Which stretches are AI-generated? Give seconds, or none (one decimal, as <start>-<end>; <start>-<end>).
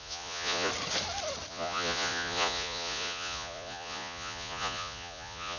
0.0-0.7; 1.5-5.6